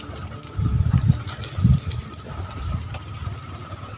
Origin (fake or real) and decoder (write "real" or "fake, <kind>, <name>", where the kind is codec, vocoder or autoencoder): fake, vocoder, BigVGAN v2